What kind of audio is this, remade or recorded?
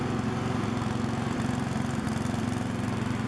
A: recorded